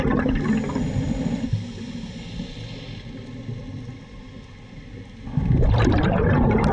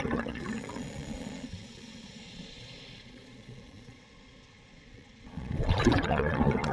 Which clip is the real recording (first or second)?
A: first